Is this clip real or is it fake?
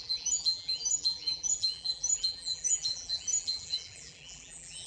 fake